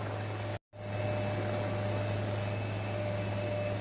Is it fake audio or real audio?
real